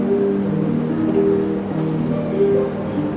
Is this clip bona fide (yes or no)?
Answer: yes